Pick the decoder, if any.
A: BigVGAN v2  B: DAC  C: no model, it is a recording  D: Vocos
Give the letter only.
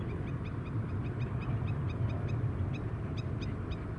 A